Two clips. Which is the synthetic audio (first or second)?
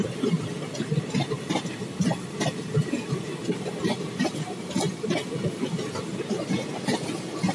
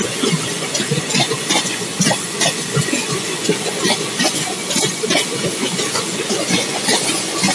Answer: second